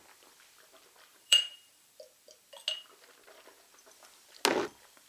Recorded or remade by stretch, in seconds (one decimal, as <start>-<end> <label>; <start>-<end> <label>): 0.0-1.1 recorded; 1.1-1.9 remade; 1.9-5.1 recorded